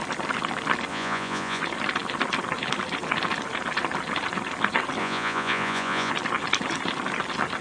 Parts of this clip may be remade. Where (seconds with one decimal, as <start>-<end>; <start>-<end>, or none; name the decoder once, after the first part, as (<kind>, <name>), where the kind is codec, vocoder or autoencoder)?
0.9-1.6 (vocoder, Vocos); 5.0-6.1